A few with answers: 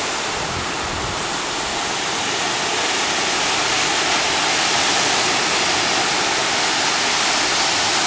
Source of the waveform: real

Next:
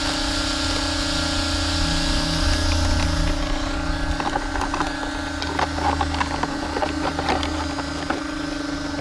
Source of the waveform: real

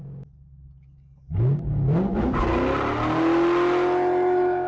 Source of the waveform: real